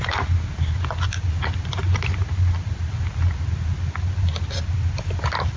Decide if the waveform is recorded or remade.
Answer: recorded